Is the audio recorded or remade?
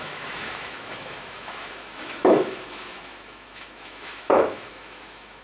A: remade